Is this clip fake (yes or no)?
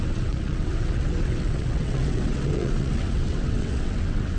yes